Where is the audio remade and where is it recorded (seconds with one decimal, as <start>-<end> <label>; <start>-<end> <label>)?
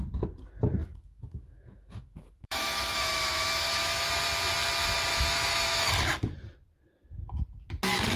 0.0-0.8 recorded; 0.8-4.1 remade; 4.1-5.1 recorded; 5.1-5.9 remade; 5.9-8.2 recorded